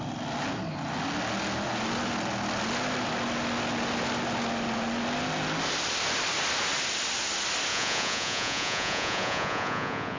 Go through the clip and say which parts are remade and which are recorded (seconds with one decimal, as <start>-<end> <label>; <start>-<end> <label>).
0.0-7.7 recorded; 7.7-10.2 remade